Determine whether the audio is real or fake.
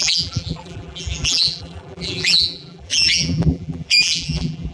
fake